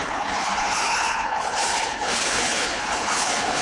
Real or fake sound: fake